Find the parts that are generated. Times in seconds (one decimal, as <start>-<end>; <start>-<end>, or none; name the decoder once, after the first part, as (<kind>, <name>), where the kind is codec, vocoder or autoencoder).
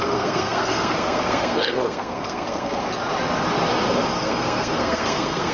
0.0-2.9 (codec, SNAC); 4.2-5.5